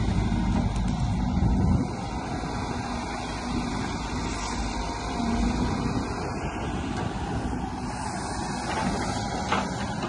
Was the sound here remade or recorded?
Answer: recorded